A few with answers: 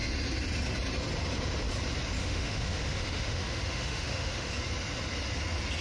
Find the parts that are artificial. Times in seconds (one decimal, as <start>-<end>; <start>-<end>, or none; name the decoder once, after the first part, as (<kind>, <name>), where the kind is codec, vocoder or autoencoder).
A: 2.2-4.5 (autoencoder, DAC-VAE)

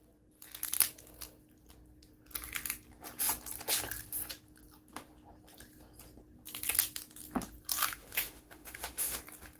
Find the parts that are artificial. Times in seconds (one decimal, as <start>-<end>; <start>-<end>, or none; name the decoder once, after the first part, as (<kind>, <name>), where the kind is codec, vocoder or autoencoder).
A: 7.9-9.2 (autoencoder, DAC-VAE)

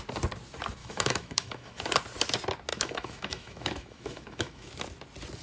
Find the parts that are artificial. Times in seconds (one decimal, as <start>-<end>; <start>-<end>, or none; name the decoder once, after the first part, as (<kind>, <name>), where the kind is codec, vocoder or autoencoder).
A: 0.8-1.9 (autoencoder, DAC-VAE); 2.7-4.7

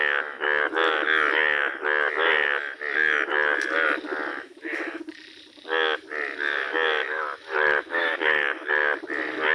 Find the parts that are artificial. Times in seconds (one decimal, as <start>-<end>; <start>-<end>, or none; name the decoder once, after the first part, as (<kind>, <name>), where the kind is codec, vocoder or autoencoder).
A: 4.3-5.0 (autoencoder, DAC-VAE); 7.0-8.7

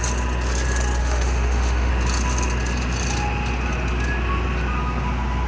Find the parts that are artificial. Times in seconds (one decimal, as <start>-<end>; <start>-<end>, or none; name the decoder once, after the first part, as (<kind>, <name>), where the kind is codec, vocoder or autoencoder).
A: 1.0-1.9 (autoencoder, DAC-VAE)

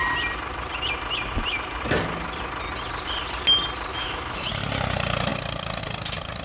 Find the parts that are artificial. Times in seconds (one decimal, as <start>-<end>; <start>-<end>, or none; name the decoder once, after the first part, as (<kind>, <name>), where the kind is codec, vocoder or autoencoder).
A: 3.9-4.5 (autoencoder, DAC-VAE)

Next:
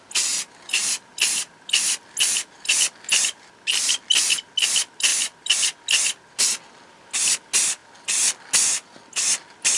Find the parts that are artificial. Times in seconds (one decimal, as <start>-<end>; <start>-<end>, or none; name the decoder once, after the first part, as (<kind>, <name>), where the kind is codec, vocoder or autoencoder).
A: none

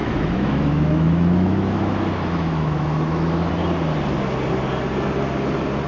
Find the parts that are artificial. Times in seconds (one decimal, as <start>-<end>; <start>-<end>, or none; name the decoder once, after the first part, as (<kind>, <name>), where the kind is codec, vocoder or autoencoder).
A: 0.0-3.5 (autoencoder, DAC-VAE)